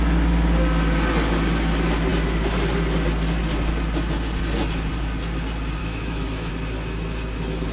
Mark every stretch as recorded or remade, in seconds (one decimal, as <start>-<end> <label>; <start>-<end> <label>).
0.0-5.8 recorded; 5.8-6.5 remade; 6.5-7.7 recorded